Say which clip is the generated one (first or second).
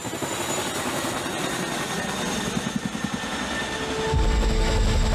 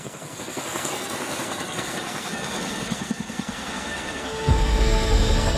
second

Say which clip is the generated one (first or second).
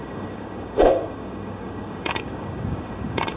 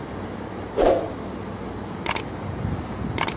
first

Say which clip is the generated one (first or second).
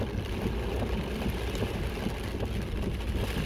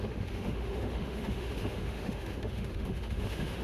second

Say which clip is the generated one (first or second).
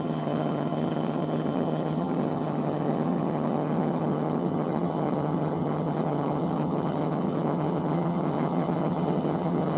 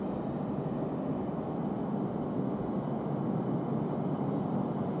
first